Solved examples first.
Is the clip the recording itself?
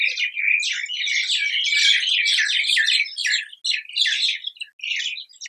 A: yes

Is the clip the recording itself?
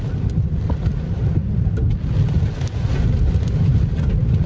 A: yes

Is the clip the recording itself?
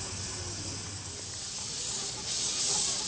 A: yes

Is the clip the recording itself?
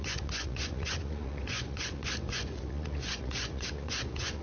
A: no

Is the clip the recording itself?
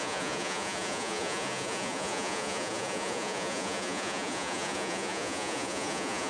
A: no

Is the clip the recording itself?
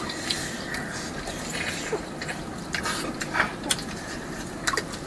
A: yes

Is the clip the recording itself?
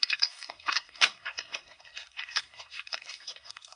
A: no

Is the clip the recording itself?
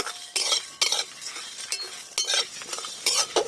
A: yes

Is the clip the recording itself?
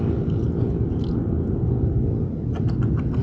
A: yes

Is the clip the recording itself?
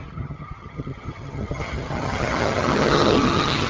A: no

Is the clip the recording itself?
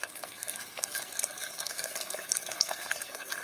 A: no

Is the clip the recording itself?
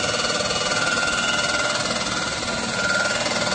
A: yes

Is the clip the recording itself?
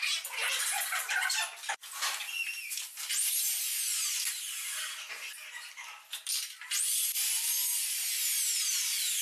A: yes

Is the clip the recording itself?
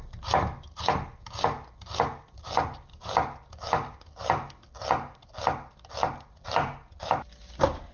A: yes